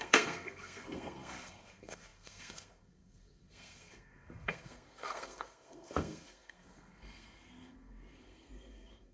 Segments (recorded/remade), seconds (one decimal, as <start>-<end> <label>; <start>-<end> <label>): 0.0-9.1 remade